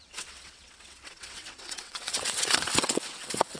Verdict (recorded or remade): remade